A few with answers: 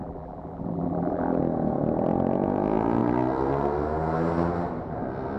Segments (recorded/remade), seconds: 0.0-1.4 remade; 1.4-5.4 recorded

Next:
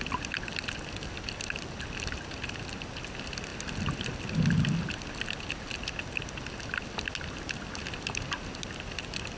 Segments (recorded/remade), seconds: 0.0-9.4 recorded